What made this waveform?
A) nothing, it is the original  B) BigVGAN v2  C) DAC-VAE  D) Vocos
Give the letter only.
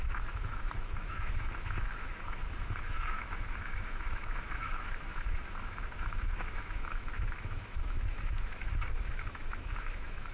C